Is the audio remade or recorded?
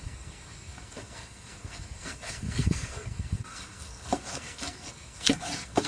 remade